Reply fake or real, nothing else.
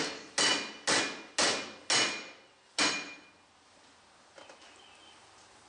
real